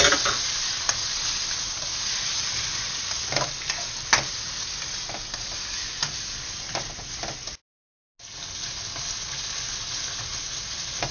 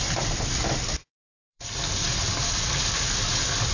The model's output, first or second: second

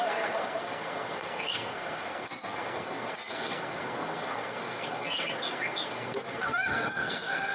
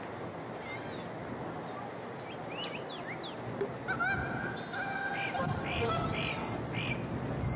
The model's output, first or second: first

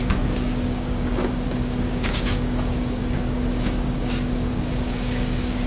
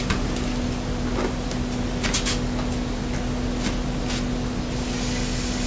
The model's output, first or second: first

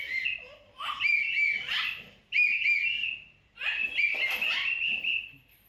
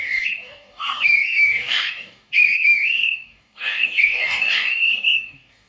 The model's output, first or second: second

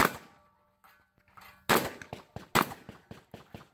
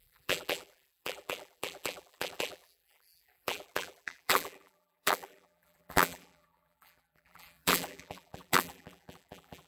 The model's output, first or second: second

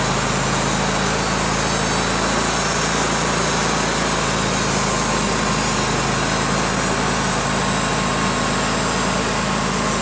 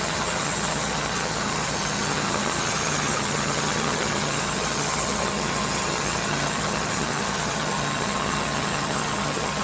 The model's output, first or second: second